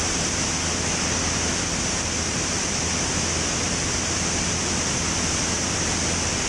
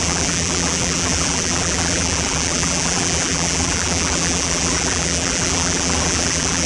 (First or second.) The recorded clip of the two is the first